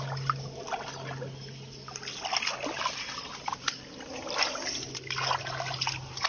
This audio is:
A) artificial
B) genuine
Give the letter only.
B